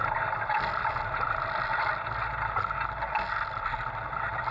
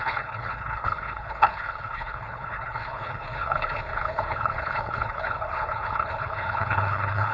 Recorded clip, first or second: first